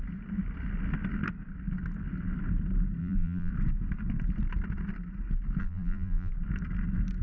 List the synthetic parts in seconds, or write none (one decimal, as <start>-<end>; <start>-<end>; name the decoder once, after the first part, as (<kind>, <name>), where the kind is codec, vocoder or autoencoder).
3.0-3.5 (vocoder, BigVGAN v2); 5.6-6.3

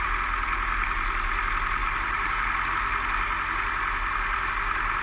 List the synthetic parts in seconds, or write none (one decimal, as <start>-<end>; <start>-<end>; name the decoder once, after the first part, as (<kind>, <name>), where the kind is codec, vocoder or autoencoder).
1.8-2.5 (vocoder, BigVGAN v2)

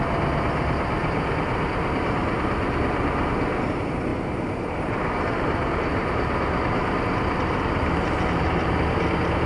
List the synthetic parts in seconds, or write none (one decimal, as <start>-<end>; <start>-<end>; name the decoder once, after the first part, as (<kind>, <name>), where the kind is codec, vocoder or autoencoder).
4.1-8.7 (vocoder, BigVGAN v2)

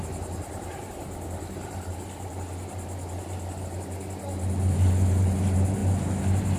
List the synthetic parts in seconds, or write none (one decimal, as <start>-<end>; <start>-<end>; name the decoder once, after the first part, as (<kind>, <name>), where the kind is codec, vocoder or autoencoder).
none

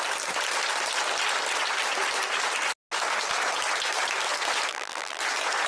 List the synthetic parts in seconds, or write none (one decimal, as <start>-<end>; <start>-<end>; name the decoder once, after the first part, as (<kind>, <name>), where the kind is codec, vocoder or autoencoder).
4.7-5.2 (vocoder, BigVGAN v2)

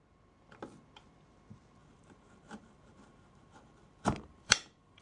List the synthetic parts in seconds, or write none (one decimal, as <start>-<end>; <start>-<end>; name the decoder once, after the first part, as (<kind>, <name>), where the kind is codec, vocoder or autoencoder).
1.8-5.0 (vocoder, BigVGAN v2)